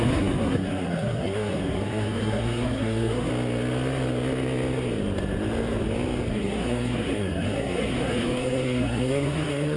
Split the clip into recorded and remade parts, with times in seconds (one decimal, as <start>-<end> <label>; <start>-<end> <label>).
0.0-3.3 remade; 3.3-6.3 recorded; 6.3-9.8 remade